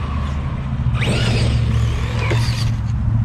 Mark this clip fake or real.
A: real